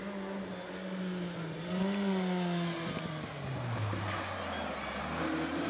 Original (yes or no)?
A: yes